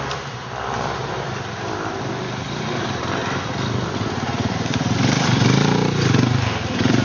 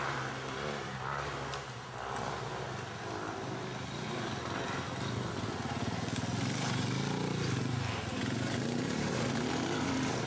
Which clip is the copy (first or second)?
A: first